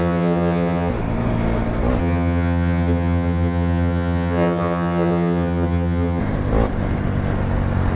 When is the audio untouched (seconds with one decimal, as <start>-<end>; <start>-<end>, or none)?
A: 0.9-2.0; 6.2-8.0